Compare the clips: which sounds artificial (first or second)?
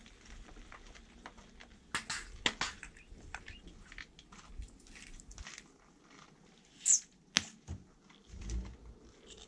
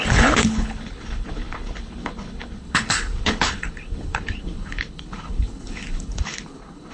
second